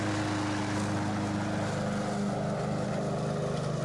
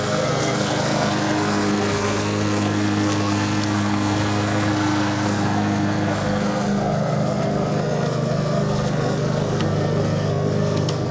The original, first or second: first